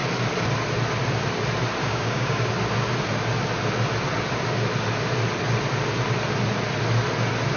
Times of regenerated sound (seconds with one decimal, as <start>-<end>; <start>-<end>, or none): 1.8-2.5